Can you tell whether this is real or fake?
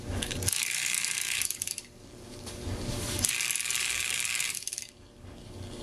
fake